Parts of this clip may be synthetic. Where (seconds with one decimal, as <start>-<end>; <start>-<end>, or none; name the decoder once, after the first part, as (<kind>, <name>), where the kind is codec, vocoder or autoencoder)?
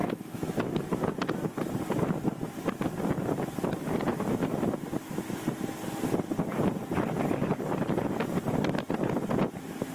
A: 0.0-0.9 (autoencoder, DAC-VAE)